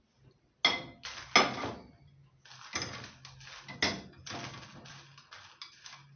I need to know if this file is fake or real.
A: real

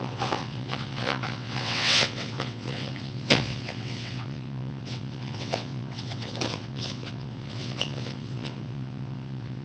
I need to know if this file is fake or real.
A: fake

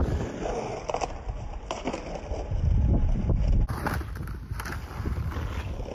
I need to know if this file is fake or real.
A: real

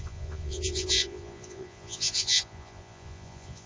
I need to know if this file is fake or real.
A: fake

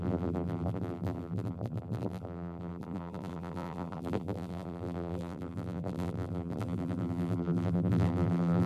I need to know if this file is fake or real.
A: fake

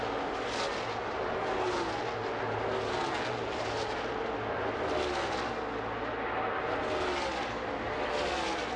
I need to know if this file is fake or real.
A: real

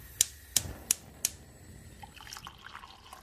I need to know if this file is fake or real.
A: real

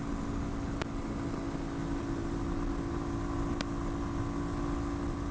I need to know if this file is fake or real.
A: real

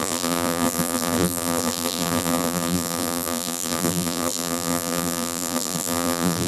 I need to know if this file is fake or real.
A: fake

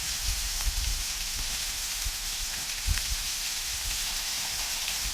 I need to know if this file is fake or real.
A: fake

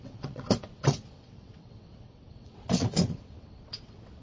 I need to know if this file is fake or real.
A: fake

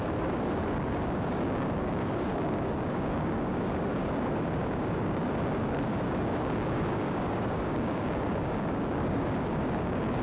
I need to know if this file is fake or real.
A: fake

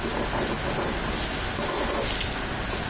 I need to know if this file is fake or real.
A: real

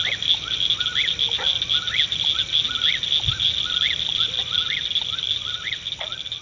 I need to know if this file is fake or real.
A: real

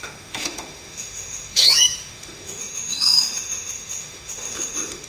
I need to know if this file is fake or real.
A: fake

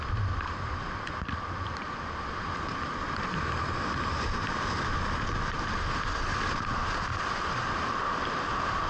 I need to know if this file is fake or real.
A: real